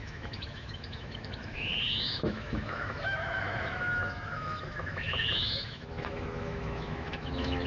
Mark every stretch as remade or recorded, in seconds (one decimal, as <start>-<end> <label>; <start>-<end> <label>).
0.0-7.7 remade